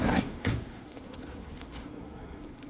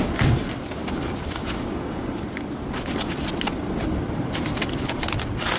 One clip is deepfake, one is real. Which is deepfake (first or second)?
first